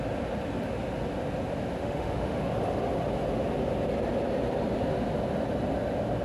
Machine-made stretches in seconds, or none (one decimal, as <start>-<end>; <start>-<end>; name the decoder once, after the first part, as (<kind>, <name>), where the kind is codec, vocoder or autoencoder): 1.8-2.4 (autoencoder, DAC-VAE)